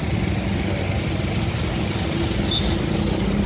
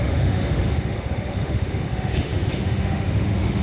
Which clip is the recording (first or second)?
first